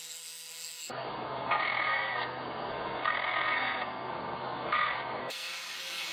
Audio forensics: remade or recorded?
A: remade